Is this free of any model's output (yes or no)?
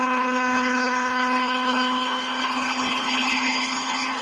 no